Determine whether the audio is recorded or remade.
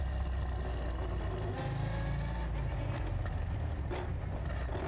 recorded